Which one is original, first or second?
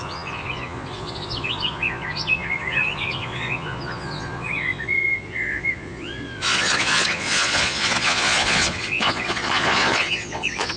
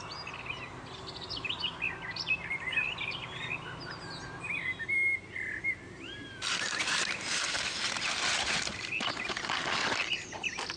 second